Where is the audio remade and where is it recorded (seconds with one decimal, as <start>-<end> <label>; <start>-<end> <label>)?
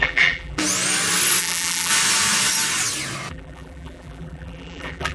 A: 0.0-0.6 remade; 0.6-1.4 recorded; 1.4-1.9 remade; 1.9-3.3 recorded; 3.3-5.1 remade